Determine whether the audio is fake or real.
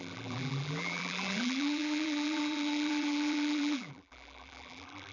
fake